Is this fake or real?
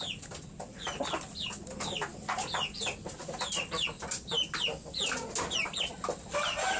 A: real